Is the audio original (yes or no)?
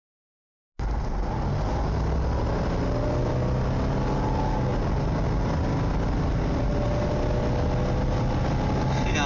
yes